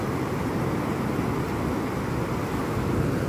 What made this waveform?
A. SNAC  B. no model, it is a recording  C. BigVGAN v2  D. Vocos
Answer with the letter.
B